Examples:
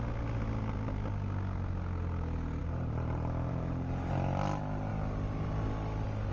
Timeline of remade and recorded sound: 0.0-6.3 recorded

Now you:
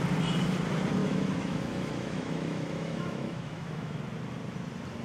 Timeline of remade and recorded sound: 0.0-1.0 recorded; 1.0-4.0 remade; 4.0-5.0 recorded

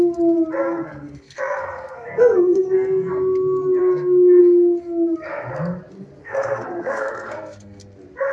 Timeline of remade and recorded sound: 0.0-0.6 recorded; 0.6-3.1 remade; 3.1-3.8 recorded; 3.8-4.4 remade; 4.4-6.2 recorded; 6.2-7.8 remade; 7.8-8.3 recorded

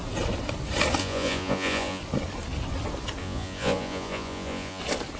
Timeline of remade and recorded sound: 0.0-1.0 recorded; 1.0-2.0 remade; 2.0-3.2 recorded; 3.2-4.8 remade; 4.8-5.2 recorded

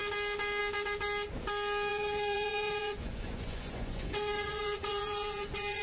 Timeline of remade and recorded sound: 0.0-1.9 recorded; 1.9-5.8 remade